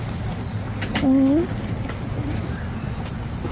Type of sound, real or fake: real